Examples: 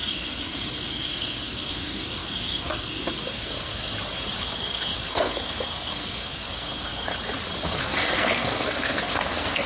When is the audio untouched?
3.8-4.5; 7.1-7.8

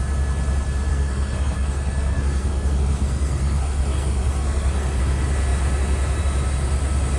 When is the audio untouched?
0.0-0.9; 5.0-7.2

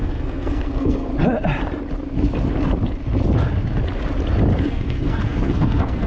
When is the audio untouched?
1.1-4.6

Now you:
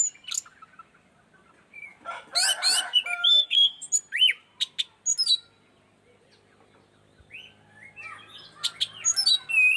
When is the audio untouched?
0.0-3.3; 3.9-9.8